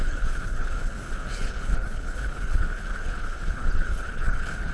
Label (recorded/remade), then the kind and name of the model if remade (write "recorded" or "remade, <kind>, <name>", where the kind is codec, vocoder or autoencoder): remade, codec, HILCodec